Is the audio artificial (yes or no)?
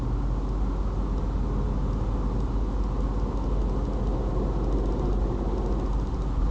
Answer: no